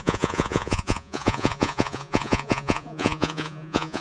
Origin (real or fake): fake